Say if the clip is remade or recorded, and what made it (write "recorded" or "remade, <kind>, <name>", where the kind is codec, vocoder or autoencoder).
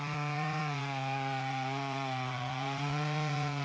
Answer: remade, vocoder, Vocos